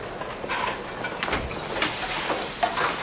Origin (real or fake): real